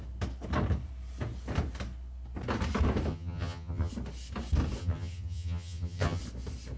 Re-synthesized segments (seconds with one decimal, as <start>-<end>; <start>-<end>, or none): 3.1-3.9; 4.8-6.2